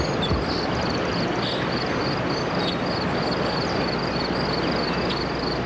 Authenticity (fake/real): real